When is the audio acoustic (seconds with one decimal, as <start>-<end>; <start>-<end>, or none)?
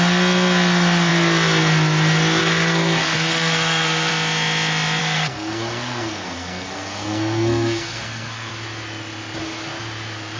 0.0-2.4; 4.1-5.0; 8.5-10.4